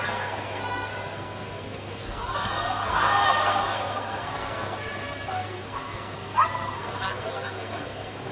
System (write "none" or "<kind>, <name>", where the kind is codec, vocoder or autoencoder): codec, SNAC